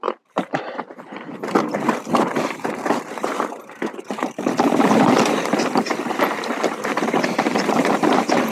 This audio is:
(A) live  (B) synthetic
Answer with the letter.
B